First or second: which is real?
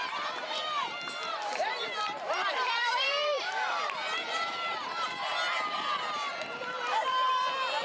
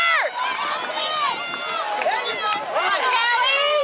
second